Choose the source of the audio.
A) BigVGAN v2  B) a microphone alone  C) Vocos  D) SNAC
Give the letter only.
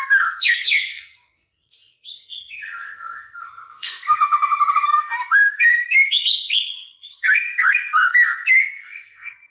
D